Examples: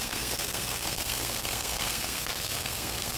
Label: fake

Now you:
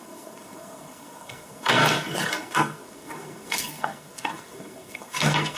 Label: fake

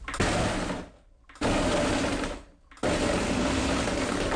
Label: real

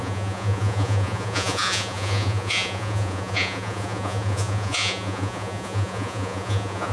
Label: fake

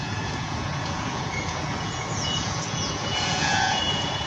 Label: fake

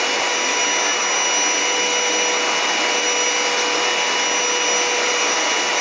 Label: real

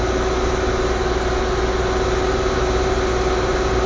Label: real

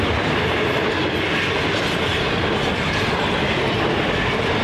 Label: real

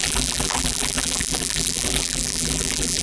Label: fake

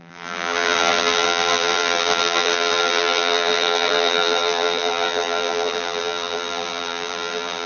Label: fake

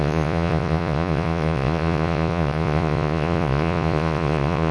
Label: fake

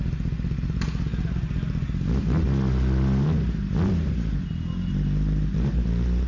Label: real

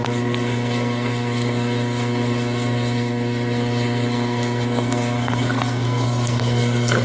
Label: fake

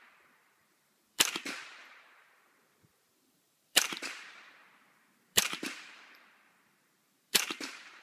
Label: fake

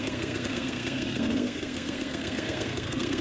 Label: fake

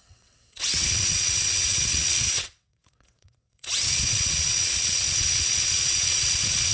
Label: fake